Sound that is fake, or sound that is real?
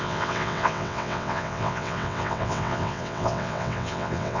fake